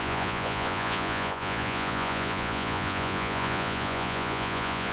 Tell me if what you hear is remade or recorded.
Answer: remade